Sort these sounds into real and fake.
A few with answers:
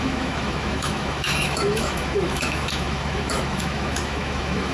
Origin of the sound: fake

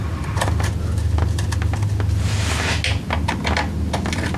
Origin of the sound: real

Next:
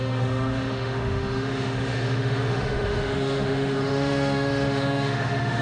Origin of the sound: fake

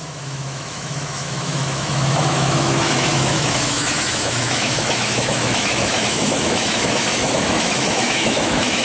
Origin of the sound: fake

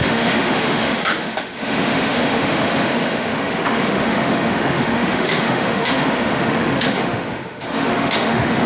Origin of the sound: fake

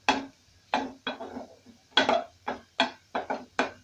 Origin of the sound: real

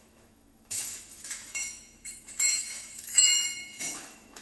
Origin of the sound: fake